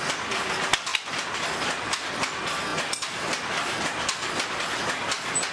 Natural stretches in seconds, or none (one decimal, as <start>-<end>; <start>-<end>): 0.0-5.5

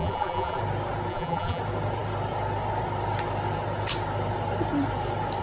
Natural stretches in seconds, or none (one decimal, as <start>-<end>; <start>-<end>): 0.6-1.1; 1.6-5.4

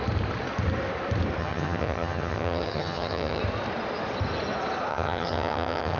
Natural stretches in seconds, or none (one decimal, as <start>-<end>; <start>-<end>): 0.0-1.4; 3.4-4.9

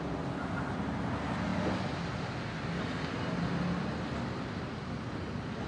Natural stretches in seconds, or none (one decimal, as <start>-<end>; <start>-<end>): 0.0-5.7